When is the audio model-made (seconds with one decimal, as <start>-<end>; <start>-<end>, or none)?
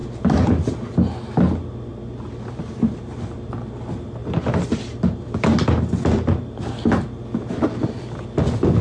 0.0-0.5; 1.9-3.5; 4.2-5.3